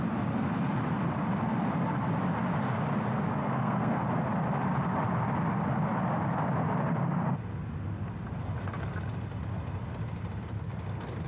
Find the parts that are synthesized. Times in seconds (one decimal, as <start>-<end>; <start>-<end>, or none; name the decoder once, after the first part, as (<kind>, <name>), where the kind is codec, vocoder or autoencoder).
3.4-4.0 (codec, SNAC)